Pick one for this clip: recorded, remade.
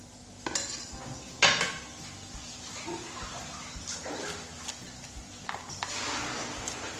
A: recorded